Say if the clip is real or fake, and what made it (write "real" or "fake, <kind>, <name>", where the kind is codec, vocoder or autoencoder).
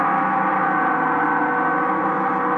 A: real